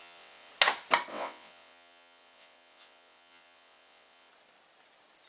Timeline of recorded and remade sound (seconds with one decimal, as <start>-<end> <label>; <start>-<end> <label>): 0.0-0.5 remade; 0.5-1.1 recorded; 1.1-4.3 remade; 4.3-5.3 recorded